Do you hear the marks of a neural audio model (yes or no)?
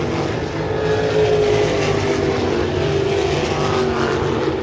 no